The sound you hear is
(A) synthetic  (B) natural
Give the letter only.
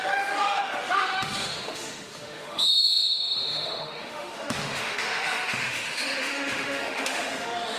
A